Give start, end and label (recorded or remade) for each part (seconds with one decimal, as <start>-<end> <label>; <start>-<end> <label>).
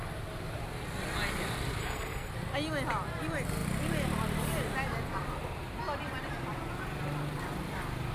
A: 0.0-1.8 recorded; 1.8-2.3 remade; 2.3-8.1 recorded